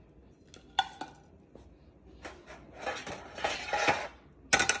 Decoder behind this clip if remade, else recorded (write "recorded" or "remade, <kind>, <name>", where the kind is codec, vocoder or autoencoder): recorded